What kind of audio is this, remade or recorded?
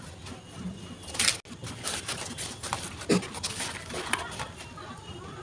recorded